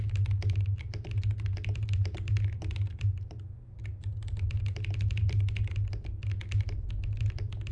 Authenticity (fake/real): real